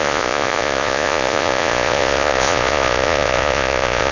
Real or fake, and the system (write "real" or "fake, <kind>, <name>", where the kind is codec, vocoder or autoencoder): fake, vocoder, Vocos